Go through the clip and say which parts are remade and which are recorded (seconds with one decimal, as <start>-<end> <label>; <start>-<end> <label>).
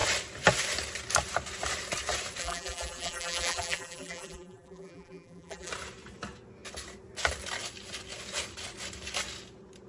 0.0-2.4 recorded; 2.4-5.7 remade; 5.7-9.9 recorded